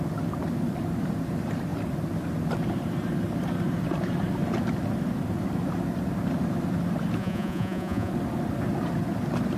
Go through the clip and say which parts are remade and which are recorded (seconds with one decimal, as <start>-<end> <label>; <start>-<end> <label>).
0.0-7.2 recorded; 7.2-8.1 remade; 8.1-9.6 recorded